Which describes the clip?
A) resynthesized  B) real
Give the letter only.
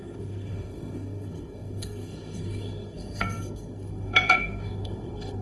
A